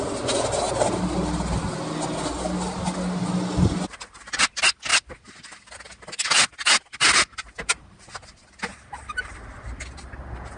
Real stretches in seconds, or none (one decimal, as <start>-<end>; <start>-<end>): 0.0-10.6